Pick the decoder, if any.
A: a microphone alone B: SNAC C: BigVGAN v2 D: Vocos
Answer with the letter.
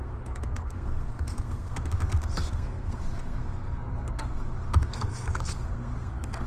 B